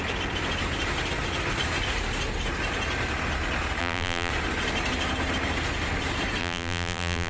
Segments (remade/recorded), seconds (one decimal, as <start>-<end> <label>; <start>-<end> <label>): 0.0-3.8 recorded; 3.8-4.3 remade; 4.3-6.4 recorded; 6.4-7.3 remade